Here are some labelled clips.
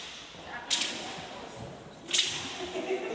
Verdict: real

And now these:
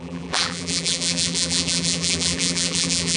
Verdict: fake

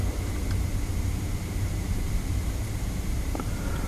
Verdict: fake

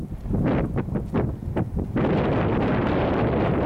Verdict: real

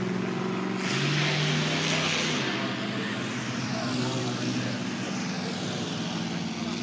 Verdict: real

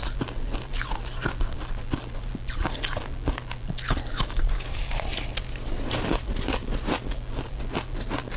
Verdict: real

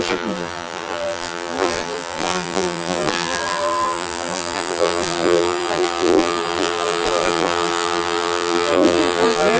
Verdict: fake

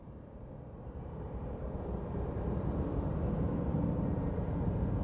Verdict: fake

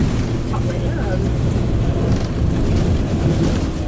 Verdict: real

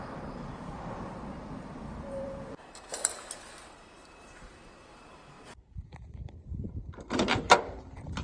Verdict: fake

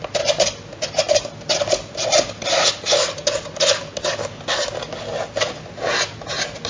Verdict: real